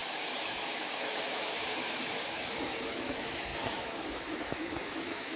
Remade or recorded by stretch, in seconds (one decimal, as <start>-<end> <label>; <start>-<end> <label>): 0.0-5.4 remade